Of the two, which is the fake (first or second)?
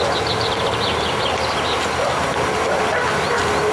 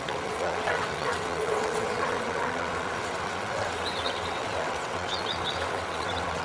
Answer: second